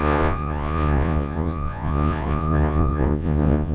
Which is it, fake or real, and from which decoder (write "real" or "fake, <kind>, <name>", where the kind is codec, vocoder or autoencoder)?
fake, vocoder, Vocos